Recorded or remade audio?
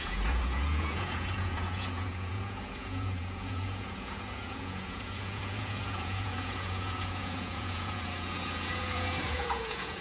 remade